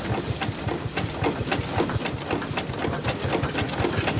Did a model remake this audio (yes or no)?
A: no